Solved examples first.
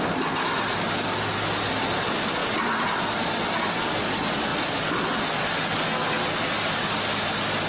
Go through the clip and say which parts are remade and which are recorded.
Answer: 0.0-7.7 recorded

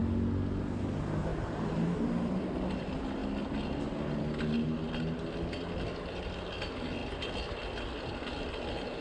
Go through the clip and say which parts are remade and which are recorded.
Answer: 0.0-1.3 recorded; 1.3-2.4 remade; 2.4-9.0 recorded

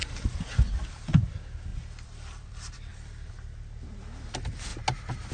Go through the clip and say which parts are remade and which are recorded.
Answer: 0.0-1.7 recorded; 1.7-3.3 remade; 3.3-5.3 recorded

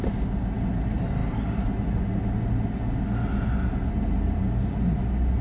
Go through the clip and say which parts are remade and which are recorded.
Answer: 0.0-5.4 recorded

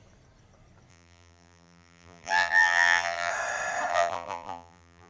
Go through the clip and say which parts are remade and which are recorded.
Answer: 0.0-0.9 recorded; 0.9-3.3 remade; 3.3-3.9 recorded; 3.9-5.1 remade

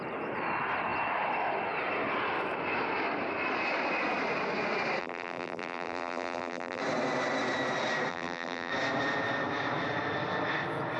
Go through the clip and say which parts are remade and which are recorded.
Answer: 0.0-5.0 recorded; 5.0-6.8 remade; 6.8-8.1 recorded; 8.1-8.7 remade; 8.7-11.0 recorded